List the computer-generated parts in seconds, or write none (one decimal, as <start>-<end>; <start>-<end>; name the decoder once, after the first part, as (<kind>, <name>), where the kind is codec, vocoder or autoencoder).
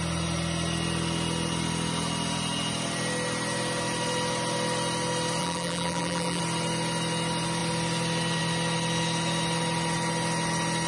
5.4-6.4 (vocoder, BigVGAN v2)